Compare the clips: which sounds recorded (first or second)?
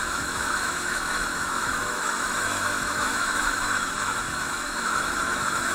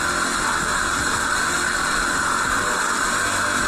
second